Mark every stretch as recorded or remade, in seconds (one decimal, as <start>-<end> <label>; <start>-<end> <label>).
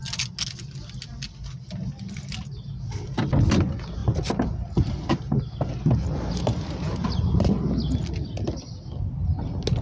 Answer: 0.0-9.8 recorded